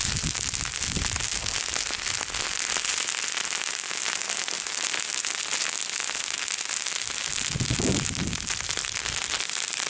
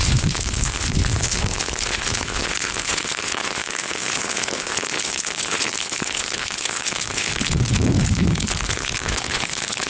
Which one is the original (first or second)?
first